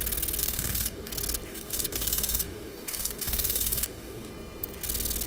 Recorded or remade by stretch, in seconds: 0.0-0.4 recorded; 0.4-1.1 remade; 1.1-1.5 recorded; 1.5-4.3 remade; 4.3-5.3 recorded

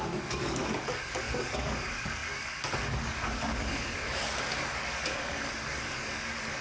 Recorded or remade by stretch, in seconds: 0.0-6.6 remade

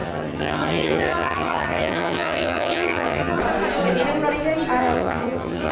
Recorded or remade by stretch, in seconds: 0.0-3.4 remade; 3.4-4.8 recorded; 4.8-5.7 remade

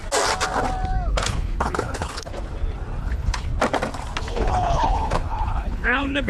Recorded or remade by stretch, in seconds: 0.0-1.1 recorded; 1.1-2.3 remade; 2.3-3.0 recorded; 3.0-3.5 remade; 3.5-4.2 recorded; 4.2-6.3 remade

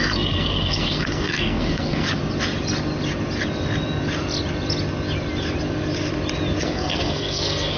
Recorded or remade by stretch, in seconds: 0.0-2.2 remade; 2.2-6.6 recorded; 6.6-7.8 remade

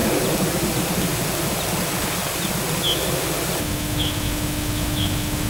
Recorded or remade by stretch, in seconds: 0.0-3.6 recorded; 3.6-5.5 remade